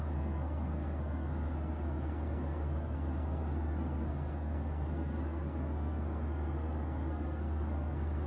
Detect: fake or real fake